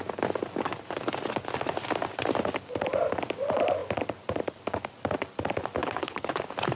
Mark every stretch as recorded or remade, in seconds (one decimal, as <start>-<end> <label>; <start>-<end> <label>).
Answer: 0.0-5.8 recorded; 5.8-6.3 remade; 6.3-6.8 recorded